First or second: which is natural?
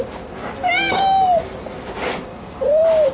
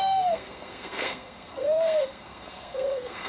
first